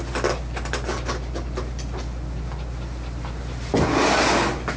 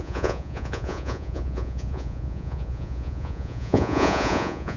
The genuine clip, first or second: first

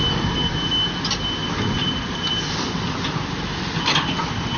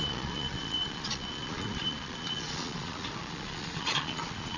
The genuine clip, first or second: first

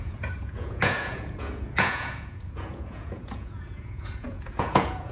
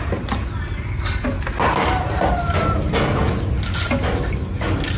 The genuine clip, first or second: second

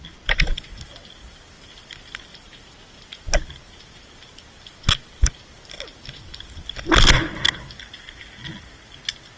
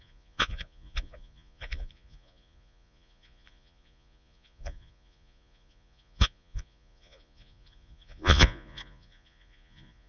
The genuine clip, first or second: first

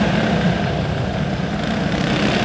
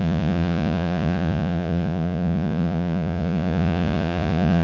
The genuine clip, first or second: first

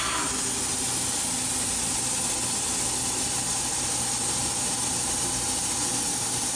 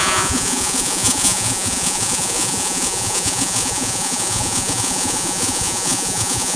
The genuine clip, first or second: first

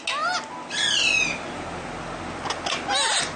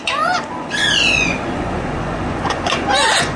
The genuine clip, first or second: first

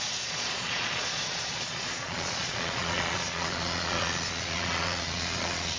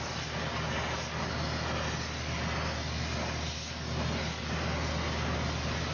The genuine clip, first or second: second